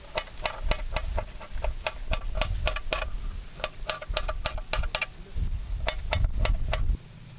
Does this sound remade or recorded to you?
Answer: recorded